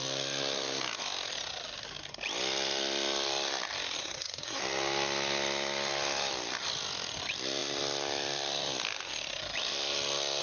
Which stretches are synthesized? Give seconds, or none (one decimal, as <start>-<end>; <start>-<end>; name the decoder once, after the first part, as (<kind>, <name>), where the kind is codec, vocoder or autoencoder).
4.0-4.6 (codec, SNAC)